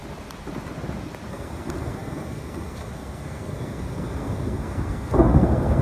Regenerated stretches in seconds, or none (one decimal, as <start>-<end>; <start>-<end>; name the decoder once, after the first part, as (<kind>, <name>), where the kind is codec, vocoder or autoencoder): 1.3-5.8 (codec, SNAC)